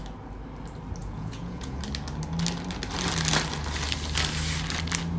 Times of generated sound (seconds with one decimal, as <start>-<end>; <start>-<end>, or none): 1.0-1.8